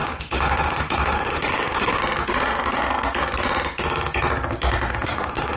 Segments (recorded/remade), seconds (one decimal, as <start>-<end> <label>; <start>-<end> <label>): 0.0-2.0 remade; 2.0-4.9 recorded; 4.9-5.6 remade